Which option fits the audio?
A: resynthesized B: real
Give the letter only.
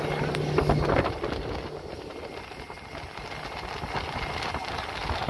B